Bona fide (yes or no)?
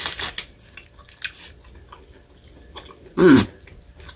yes